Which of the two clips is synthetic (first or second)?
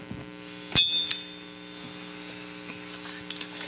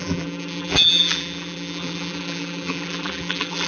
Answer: second